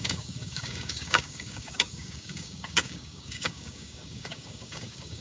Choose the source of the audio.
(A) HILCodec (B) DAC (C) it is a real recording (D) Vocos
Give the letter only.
B